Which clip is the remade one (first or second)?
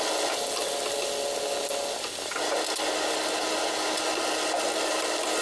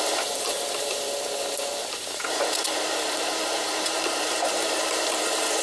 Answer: second